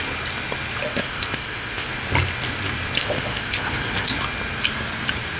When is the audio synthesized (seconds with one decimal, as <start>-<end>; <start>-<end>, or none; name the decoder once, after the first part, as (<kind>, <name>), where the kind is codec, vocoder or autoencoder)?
0.9-1.9 (codec, ZipCodec); 3.0-4.1